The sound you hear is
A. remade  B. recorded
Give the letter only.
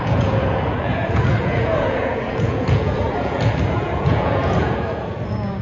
A